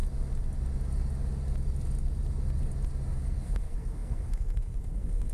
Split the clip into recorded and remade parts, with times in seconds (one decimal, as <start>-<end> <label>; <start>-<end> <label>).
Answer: 0.0-3.2 recorded; 3.2-5.3 remade